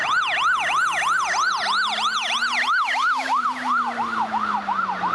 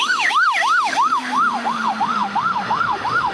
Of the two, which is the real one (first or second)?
first